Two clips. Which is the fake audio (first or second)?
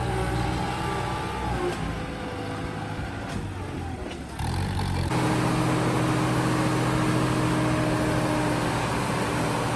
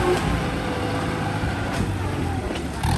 second